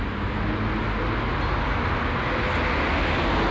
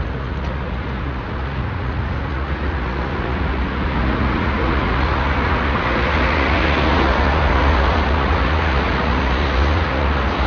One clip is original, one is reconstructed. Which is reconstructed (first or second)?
second